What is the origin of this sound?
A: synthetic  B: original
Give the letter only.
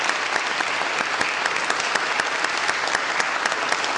B